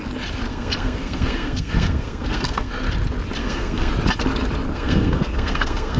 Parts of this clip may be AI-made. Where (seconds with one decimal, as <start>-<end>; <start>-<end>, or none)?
0.5-2.7; 3.4-3.9; 4.7-6.0